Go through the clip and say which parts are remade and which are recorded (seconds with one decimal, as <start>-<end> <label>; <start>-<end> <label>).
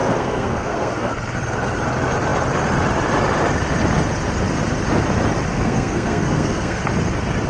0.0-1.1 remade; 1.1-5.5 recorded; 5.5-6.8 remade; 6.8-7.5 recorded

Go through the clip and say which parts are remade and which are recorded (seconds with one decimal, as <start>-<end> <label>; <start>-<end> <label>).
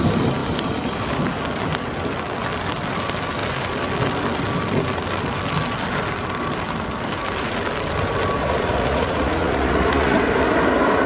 0.0-8.4 recorded; 8.4-10.2 remade; 10.2-11.1 recorded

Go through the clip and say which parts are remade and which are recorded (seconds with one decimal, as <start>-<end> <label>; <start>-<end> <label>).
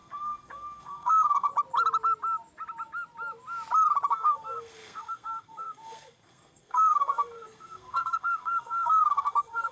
0.0-1.5 remade; 1.5-4.1 recorded; 4.1-9.7 remade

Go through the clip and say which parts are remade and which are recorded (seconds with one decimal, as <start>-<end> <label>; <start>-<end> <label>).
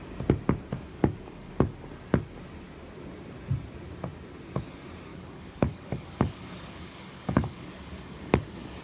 0.0-0.9 recorded; 0.9-1.5 remade; 1.5-5.1 recorded; 5.1-8.8 remade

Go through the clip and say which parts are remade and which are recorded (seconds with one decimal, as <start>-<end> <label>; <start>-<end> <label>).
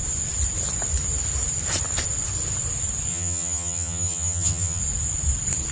0.0-3.1 recorded; 3.1-4.8 remade; 4.8-5.7 recorded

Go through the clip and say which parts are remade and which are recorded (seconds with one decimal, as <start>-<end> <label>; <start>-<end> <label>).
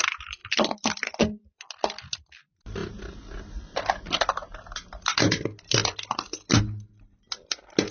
0.0-7.9 recorded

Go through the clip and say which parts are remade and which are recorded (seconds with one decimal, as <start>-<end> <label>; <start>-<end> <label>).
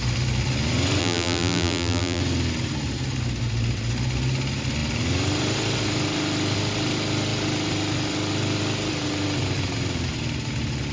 0.0-1.0 recorded; 1.0-2.2 remade; 2.2-10.9 recorded